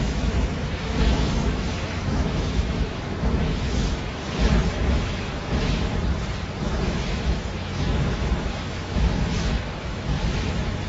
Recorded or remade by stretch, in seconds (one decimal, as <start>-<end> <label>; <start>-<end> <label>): 0.0-5.9 remade; 5.9-6.6 recorded; 6.6-10.9 remade